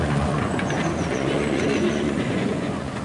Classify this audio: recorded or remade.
remade